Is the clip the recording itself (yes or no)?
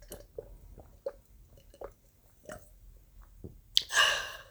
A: yes